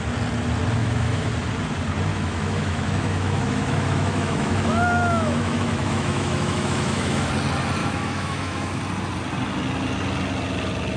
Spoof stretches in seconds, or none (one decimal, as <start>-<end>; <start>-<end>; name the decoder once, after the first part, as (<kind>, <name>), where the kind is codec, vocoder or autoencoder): 0.8-1.3 (autoencoder, DAC-VAE); 2.1-7.3; 7.8-8.8